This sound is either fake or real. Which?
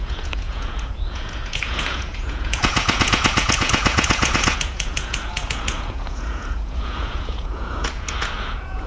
fake